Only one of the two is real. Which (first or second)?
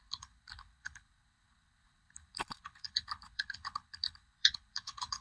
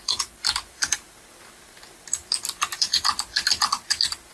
second